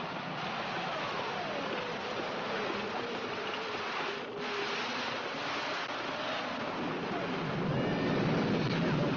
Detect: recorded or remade recorded